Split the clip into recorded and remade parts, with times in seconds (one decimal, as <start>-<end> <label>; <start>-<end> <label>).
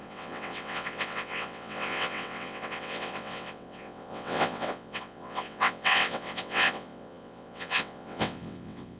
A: 0.0-9.0 remade